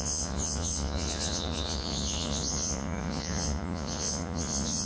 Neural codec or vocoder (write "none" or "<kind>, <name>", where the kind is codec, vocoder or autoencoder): vocoder, Vocos